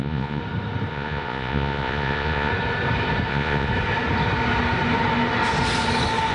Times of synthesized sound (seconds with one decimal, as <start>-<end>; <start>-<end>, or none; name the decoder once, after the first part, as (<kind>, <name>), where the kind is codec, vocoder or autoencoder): 0.0-0.4 (vocoder, Vocos); 0.9-2.5; 3.3-3.7